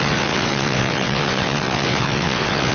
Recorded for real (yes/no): no